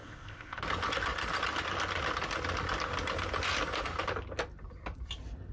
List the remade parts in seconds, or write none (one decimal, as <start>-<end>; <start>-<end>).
0.0-0.6